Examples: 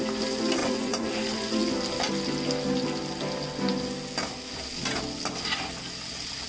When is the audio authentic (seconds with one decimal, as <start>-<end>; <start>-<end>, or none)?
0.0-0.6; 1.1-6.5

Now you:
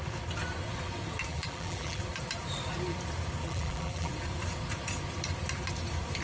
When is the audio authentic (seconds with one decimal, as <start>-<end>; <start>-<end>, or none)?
0.0-1.3; 2.0-3.4; 4.1-6.2

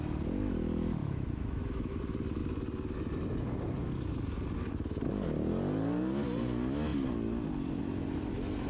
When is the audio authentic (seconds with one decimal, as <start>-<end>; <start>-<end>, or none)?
0.0-1.0; 2.0-8.7

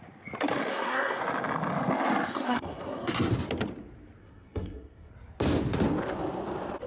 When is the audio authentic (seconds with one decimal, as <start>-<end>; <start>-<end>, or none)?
0.0-0.7; 1.2-2.3; 3.3-4.2; 5.1-6.9